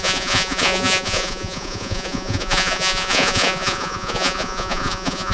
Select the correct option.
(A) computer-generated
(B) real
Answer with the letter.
A